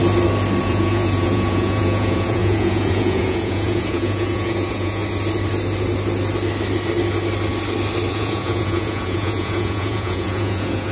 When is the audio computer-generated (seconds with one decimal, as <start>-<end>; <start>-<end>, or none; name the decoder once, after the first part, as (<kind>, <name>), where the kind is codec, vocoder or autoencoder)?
0.6-5.0 (vocoder, Vocos); 8.1-10.9